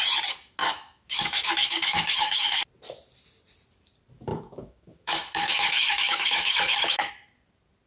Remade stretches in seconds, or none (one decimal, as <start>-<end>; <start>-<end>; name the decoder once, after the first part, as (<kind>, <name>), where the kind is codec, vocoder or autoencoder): 0.6-2.6 (autoencoder, DAC-VAE); 4.3-7.1